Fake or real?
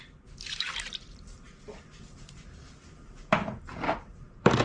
fake